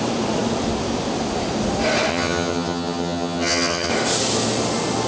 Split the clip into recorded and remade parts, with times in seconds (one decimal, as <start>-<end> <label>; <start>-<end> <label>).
0.0-2.1 recorded; 2.1-3.9 remade; 3.9-5.1 recorded